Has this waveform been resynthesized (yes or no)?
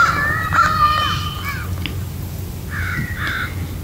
no